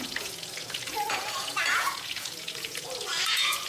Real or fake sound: fake